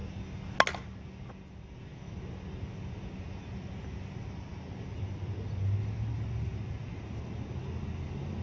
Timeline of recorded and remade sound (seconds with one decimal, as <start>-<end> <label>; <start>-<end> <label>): 0.0-8.4 recorded